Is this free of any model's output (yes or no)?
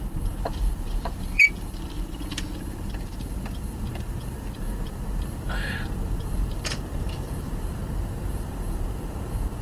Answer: no